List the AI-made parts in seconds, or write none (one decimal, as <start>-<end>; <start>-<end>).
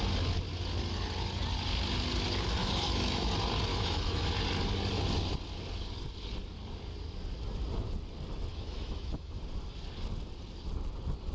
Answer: 2.6-3.3; 3.7-4.3; 8.5-9.4